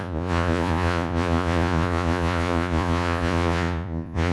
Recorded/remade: remade